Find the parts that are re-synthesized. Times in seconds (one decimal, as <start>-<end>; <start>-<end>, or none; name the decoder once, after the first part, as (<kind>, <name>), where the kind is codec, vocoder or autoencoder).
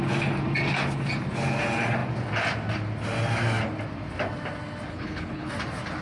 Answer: 4.9-5.5 (codec, HILCodec)